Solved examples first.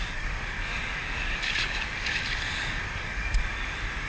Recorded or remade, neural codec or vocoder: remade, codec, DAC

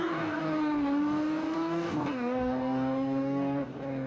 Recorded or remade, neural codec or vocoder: remade, codec, DAC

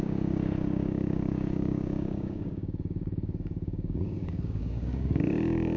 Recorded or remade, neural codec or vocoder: remade, codec, DAC